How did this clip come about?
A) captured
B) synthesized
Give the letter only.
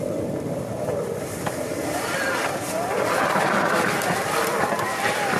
A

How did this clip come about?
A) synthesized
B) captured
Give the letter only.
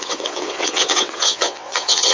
A